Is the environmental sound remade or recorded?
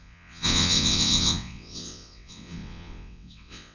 remade